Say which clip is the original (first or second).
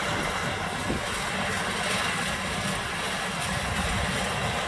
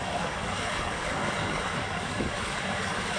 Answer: first